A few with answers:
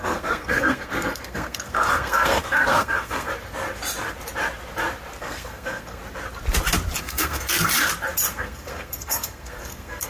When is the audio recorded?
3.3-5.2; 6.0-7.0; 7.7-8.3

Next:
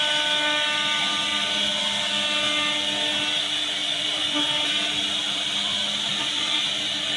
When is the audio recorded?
0.0-3.8; 4.4-6.1; 6.6-7.2